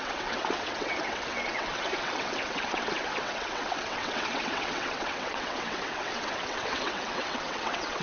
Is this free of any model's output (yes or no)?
no